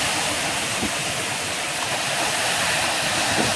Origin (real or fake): real